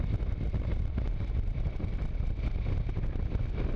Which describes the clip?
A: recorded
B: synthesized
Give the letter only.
A